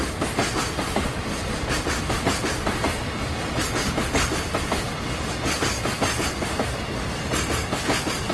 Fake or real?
real